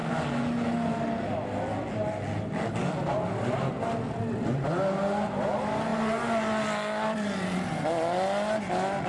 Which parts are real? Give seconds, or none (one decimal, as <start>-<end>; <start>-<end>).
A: 0.0-9.1